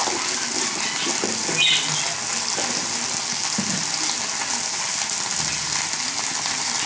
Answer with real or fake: real